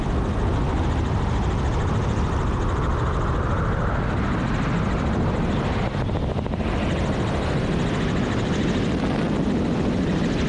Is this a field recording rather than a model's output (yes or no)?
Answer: yes